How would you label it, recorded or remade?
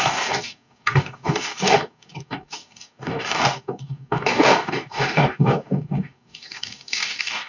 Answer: remade